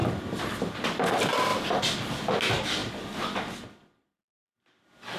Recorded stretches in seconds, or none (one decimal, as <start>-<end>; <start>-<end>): 0.7-5.2